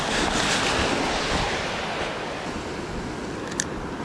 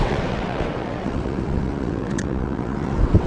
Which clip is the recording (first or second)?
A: first